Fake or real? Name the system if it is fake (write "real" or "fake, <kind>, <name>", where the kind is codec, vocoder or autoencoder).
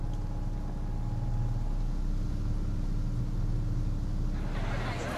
real